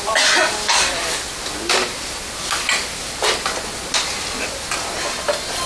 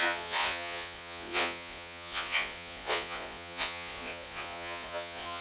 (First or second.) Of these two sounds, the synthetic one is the second